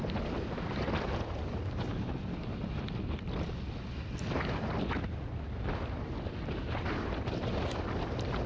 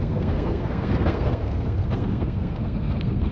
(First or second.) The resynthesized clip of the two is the second